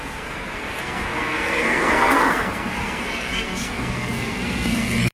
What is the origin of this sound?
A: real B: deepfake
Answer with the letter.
B